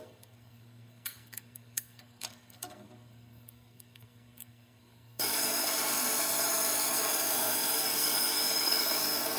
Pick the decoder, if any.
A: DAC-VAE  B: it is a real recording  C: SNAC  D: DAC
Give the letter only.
C